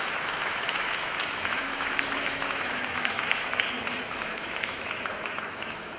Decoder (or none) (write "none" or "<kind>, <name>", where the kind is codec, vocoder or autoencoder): autoencoder, DAC-VAE